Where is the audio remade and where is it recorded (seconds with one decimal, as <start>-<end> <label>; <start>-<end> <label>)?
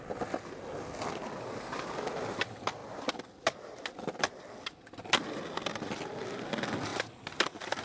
0.0-7.8 recorded